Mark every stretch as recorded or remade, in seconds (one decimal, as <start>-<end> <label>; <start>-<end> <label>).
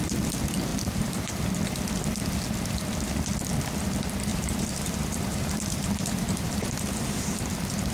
0.0-0.7 recorded; 0.7-1.3 remade; 1.3-4.3 recorded; 4.3-6.9 remade; 6.9-7.9 recorded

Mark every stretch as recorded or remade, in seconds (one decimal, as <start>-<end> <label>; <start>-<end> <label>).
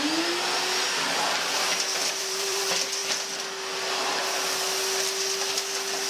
0.0-2.0 recorded; 2.0-2.6 remade; 2.6-6.1 recorded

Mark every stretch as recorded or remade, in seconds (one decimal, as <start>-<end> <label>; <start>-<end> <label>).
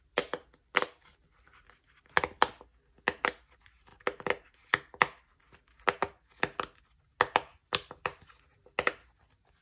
0.0-7.6 recorded; 7.6-8.2 remade; 8.2-9.6 recorded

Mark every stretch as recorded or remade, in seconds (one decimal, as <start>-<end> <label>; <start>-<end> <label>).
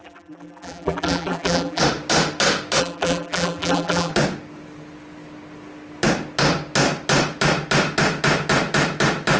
0.0-1.8 remade; 1.8-2.8 recorded; 2.8-4.1 remade; 4.1-9.4 recorded